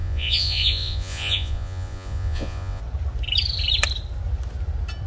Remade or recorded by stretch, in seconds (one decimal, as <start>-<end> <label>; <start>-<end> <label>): 0.0-2.8 remade; 2.8-5.1 recorded

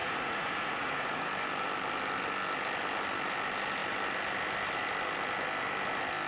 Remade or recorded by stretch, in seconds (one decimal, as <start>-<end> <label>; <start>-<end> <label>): 0.0-1.3 remade; 1.3-6.3 recorded

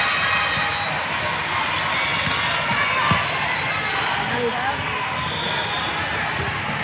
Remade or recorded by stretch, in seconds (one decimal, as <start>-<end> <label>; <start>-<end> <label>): 0.0-6.8 recorded

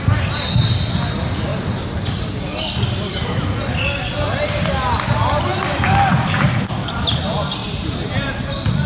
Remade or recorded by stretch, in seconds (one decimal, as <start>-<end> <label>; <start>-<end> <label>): 0.0-8.9 recorded